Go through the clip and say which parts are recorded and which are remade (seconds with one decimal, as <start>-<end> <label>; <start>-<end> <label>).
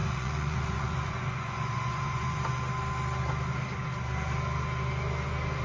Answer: 0.0-2.4 remade; 2.4-5.6 recorded